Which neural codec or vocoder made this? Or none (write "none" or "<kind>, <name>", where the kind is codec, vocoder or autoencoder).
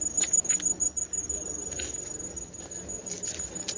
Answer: none